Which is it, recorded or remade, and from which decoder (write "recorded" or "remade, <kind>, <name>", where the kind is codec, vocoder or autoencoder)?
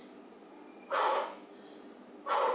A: recorded